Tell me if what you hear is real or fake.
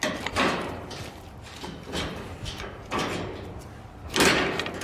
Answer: real